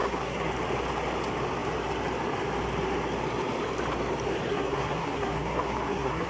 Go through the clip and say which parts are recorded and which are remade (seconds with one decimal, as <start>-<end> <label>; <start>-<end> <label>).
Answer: 0.0-0.5 remade; 0.5-4.5 recorded; 4.5-6.3 remade